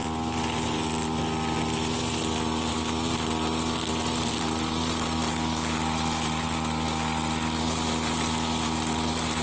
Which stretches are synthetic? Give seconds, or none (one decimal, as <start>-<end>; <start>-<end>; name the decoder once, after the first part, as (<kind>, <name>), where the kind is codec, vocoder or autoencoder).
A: none